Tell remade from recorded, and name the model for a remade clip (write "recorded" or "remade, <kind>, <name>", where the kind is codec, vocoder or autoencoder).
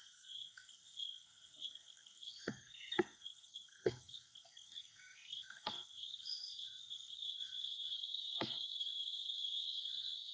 remade, codec, SNAC